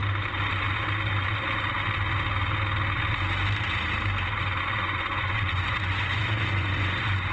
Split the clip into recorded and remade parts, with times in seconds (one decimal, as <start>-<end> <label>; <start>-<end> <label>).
0.0-4.4 recorded; 4.4-7.3 remade